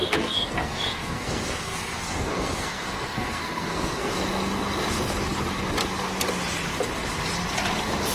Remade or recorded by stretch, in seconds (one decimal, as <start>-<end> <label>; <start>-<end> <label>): 0.0-4.1 remade; 4.1-8.1 recorded